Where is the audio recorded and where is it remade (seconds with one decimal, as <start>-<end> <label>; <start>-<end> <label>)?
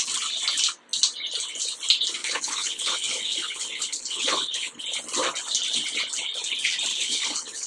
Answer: 0.0-2.2 recorded; 2.2-4.8 remade; 4.8-6.9 recorded; 6.9-7.7 remade